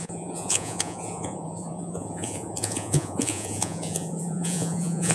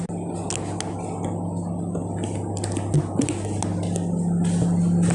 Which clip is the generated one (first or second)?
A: first